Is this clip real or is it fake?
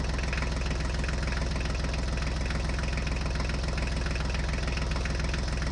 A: real